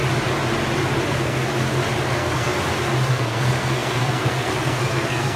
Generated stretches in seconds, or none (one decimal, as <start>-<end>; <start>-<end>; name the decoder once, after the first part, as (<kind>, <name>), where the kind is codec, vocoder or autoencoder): 1.1-1.5 (codec, SNAC); 2.1-2.5; 3.1-5.4

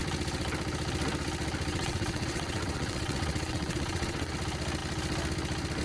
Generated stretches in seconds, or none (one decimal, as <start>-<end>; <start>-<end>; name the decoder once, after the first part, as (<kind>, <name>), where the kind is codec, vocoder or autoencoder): 1.7-4.3 (vocoder, WaveNeXt)

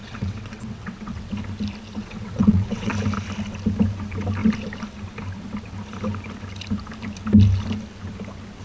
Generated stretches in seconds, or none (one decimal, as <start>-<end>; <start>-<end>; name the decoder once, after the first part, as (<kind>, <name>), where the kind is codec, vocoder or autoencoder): 0.0-1.3 (vocoder, WaveNeXt); 2.0-2.9

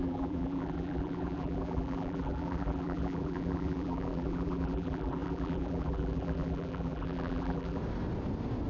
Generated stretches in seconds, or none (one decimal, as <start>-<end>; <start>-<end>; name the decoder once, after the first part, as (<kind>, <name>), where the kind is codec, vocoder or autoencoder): 0.0-7.8 (vocoder, BigVGAN v2)